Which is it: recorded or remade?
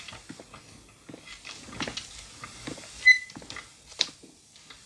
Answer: recorded